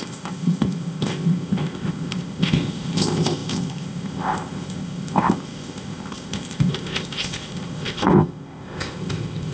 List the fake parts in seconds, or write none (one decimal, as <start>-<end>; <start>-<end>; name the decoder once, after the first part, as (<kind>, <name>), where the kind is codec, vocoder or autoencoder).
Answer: 0.0-9.5 (codec, ZipCodec)